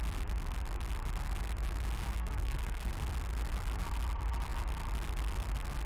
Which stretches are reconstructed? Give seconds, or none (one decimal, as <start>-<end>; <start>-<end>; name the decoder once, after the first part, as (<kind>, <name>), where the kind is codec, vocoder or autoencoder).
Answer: 2.1-2.9 (codec, SNAC)